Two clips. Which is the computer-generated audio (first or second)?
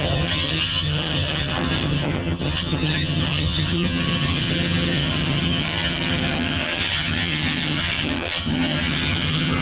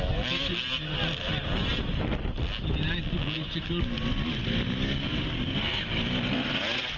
first